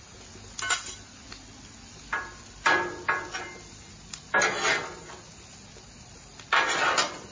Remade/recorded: recorded